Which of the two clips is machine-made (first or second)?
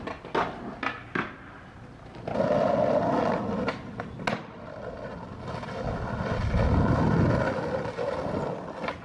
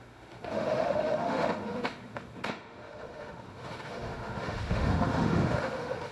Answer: second